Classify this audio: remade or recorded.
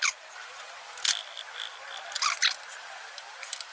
recorded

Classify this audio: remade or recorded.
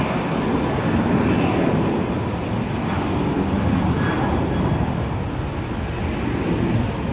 recorded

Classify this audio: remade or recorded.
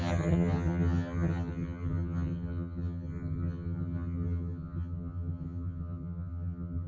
remade